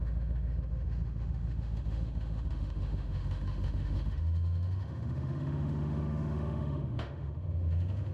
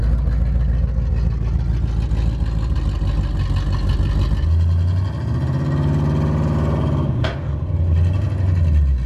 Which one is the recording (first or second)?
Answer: second